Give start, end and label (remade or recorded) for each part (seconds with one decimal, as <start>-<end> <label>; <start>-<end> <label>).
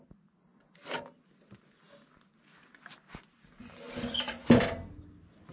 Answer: 0.0-5.5 recorded